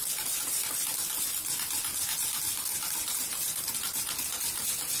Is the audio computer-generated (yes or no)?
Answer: no